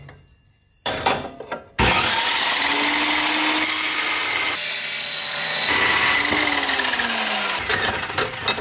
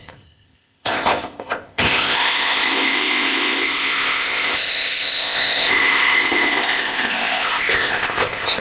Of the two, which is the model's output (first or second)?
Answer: second